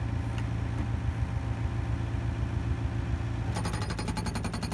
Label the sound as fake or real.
real